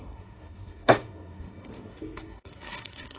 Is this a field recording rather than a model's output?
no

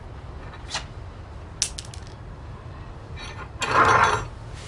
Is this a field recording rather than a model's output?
yes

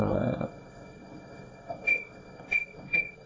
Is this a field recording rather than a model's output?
no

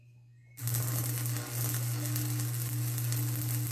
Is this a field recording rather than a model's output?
yes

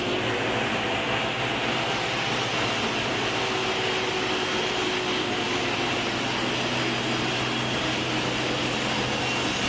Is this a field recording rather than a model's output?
yes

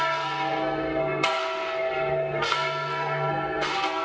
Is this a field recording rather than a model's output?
no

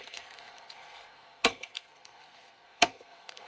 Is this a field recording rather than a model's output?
no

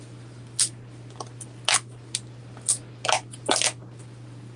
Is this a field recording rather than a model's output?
yes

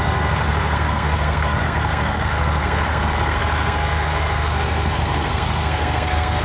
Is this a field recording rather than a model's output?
no